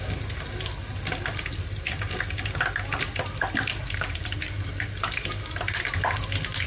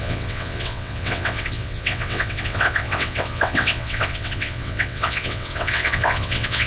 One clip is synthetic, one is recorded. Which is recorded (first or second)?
first